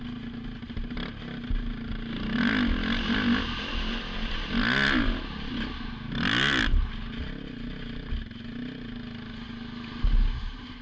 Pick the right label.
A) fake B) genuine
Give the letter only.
B